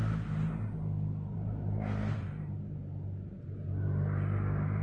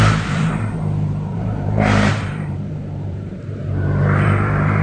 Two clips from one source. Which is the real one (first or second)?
first